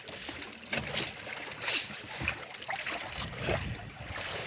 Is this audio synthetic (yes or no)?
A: no